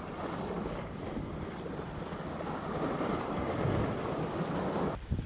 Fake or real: real